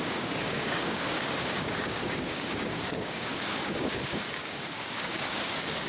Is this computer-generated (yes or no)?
yes